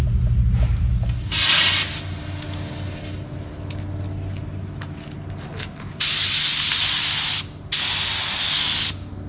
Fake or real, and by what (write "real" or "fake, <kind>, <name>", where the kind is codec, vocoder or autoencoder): real